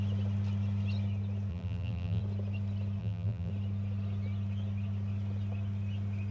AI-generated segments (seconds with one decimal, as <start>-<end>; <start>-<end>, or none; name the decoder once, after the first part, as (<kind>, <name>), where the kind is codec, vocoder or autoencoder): 1.5-2.2 (vocoder, BigVGAN v2); 3.0-3.5